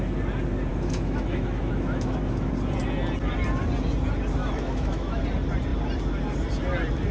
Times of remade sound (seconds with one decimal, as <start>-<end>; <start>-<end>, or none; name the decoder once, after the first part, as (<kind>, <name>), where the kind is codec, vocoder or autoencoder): 0.7-2.5 (autoencoder, DAC-VAE); 4.4-5.2